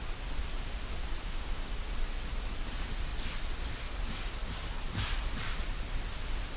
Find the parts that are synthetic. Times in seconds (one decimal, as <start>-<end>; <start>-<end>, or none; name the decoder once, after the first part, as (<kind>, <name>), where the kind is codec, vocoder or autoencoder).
1.2-1.7 (autoencoder, DAC-VAE)